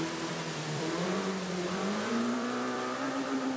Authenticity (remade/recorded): remade